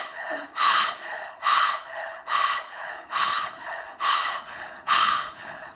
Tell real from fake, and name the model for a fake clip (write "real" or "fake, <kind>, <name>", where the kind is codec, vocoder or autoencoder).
fake, codec, HILCodec